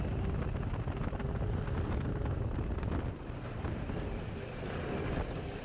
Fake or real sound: real